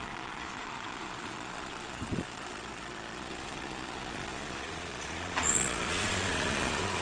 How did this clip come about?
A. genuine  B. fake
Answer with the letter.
B